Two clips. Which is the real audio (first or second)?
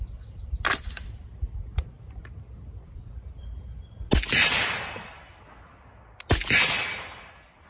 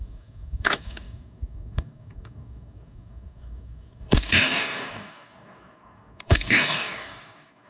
first